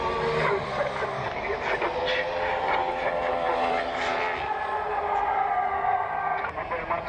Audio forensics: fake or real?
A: real